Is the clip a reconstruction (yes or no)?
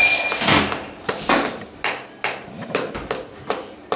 no